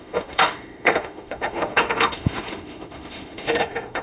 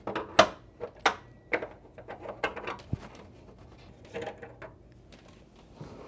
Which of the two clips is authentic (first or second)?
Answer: second